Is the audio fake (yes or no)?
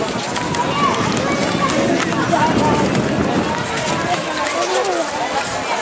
no